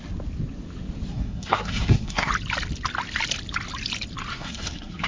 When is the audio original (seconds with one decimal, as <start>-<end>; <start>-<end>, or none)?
0.0-1.1; 2.3-4.3